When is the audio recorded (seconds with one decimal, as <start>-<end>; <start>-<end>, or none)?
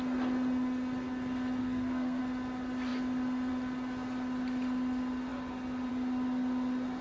0.0-1.6; 2.2-7.0